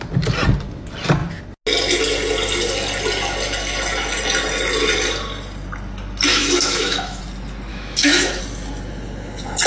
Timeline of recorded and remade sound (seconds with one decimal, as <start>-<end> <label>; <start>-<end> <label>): 0.0-6.3 recorded; 6.3-7.2 remade; 7.2-7.7 recorded; 7.7-8.4 remade; 8.4-9.7 recorded